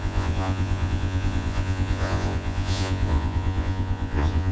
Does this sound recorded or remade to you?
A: remade